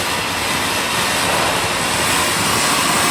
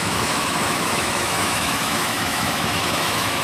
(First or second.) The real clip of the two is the first